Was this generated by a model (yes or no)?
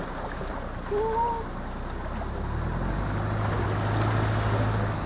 no